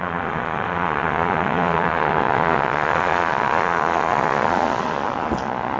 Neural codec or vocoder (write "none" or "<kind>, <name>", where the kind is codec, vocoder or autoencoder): vocoder, Vocos